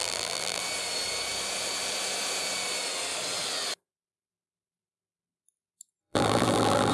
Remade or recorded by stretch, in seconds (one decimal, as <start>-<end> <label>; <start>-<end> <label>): 0.0-0.6 remade; 0.6-6.0 recorded; 6.0-6.9 remade